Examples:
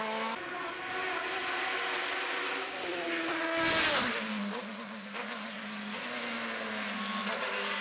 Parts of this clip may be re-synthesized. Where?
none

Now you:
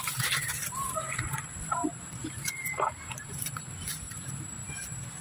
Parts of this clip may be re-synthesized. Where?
2.2-3.7 (vocoder, BigVGAN v2)